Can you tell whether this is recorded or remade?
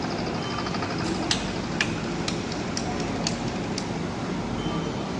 recorded